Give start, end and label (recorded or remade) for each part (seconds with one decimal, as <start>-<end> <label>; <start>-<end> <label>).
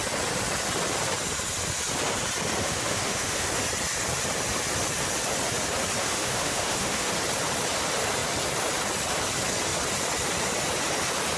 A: 0.0-2.6 recorded; 2.6-3.5 remade; 3.5-6.0 recorded; 6.0-7.1 remade; 7.1-11.4 recorded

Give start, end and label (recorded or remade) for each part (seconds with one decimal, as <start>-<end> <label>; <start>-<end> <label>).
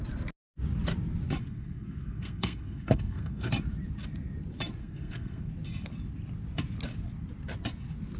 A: 0.0-1.4 recorded; 1.4-3.5 remade; 3.5-4.8 recorded; 4.8-5.5 remade; 5.5-8.2 recorded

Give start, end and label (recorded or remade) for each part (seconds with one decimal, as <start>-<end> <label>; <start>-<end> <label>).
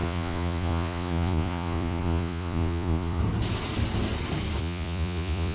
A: 0.0-3.2 remade; 3.2-4.6 recorded; 4.6-5.5 remade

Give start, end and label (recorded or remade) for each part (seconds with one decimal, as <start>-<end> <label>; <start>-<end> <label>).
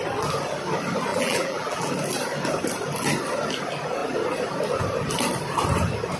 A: 0.0-1.1 recorded; 1.1-1.9 remade; 1.9-6.2 recorded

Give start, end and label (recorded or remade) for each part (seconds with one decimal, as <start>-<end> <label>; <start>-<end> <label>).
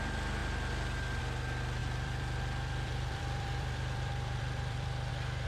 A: 0.0-1.8 recorded; 1.8-5.1 remade; 5.1-5.5 recorded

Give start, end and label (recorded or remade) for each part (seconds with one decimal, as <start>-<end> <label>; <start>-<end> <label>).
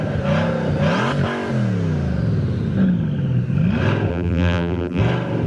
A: 0.0-4.1 recorded; 4.1-5.0 remade; 5.0-5.5 recorded